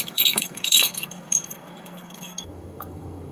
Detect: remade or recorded remade